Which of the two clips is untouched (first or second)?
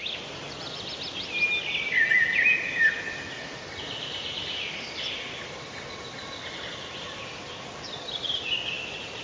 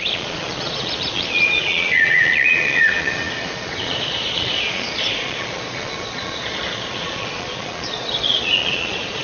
first